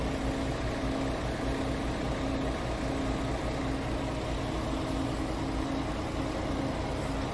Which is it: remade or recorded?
recorded